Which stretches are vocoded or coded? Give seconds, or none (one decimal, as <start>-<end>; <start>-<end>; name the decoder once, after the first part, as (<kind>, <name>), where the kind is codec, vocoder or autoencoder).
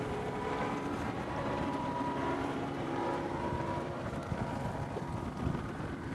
0.0-4.2 (vocoder, BigVGAN v2); 5.6-6.1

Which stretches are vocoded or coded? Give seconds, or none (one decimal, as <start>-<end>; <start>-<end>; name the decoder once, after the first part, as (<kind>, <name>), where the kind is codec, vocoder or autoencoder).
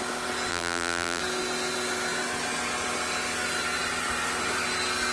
0.5-1.2 (vocoder, BigVGAN v2)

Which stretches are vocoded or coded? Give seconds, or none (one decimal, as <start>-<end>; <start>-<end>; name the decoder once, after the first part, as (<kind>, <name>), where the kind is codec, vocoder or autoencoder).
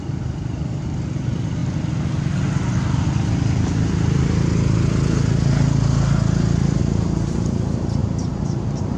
0.0-1.6 (vocoder, BigVGAN v2); 6.8-9.0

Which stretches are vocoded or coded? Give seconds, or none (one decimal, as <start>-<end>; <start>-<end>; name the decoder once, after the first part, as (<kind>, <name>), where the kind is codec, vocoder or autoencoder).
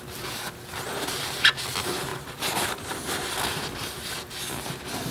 2.1-4.3 (vocoder, BigVGAN v2)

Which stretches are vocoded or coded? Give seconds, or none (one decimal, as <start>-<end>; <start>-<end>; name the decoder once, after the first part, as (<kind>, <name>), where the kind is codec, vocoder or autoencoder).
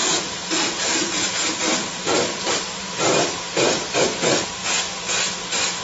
0.0-2.5 (vocoder, BigVGAN v2)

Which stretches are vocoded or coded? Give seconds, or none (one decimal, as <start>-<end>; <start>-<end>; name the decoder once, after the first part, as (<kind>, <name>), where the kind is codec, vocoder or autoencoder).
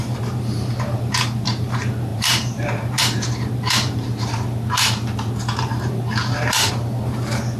0.0-7.6 (vocoder, BigVGAN v2)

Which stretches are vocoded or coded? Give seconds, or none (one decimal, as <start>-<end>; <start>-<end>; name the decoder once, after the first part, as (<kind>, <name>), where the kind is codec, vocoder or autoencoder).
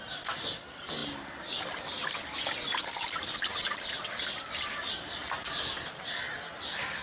none